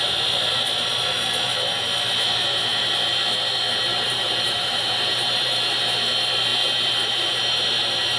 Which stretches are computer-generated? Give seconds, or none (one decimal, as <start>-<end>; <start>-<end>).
3.9-5.7; 6.5-7.3